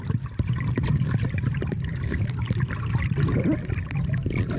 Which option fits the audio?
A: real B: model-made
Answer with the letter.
A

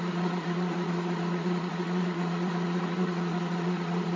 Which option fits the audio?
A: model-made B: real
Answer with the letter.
A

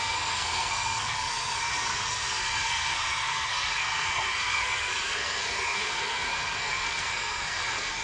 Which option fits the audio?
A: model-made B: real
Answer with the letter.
A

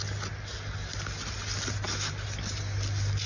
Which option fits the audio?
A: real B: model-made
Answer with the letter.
A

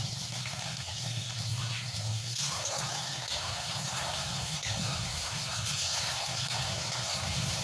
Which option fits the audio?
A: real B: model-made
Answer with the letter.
B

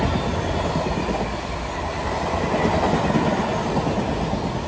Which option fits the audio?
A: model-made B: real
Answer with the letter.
B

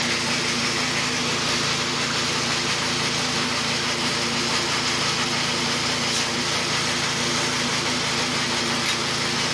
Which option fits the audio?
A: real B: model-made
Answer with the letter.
A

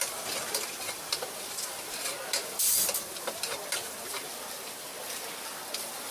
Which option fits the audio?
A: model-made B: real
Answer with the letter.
A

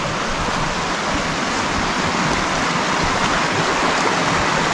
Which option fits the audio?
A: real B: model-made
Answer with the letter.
A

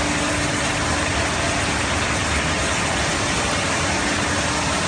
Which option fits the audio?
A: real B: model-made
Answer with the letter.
A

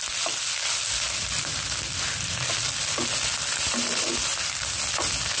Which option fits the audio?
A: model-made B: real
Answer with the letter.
B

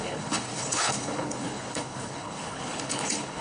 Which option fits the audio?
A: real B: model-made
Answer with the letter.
B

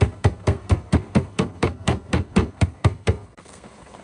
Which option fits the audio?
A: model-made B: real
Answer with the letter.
A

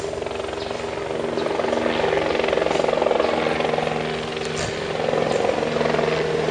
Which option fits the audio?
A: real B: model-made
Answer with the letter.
A